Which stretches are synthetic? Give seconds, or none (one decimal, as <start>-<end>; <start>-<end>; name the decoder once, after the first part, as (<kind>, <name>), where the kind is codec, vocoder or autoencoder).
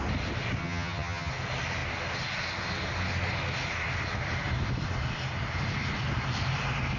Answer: 0.6-1.3 (vocoder, HiFi-GAN)